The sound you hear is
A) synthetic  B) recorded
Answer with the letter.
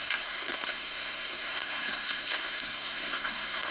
A